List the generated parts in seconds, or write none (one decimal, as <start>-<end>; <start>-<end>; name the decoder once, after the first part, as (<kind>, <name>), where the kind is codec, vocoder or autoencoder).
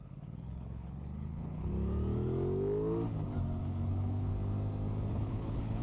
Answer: 0.0-1.7 (codec, HILCodec); 3.6-4.3; 5.1-5.8